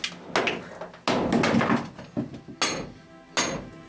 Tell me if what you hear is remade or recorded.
recorded